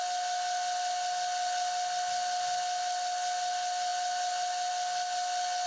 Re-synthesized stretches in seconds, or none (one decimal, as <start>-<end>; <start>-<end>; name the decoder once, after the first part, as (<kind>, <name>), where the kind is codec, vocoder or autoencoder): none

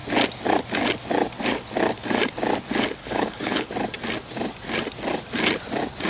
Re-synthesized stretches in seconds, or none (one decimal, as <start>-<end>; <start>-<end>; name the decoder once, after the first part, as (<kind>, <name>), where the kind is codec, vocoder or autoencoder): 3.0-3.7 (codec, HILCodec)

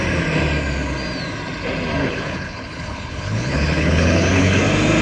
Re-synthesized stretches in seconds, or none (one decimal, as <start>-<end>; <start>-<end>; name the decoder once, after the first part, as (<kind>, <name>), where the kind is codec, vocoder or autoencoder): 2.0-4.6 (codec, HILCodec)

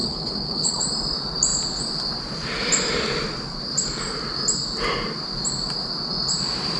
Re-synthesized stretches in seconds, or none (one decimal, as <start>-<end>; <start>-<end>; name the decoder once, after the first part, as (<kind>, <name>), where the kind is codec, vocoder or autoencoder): 0.0-0.8 (codec, HILCodec)

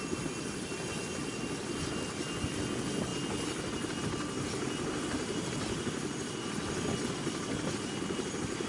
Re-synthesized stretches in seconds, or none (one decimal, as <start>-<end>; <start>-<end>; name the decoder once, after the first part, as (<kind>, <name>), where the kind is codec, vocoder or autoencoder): none

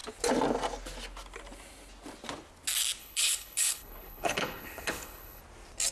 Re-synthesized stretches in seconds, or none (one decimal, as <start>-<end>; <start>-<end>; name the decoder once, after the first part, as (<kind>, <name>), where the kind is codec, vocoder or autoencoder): 3.0-5.4 (codec, HILCodec)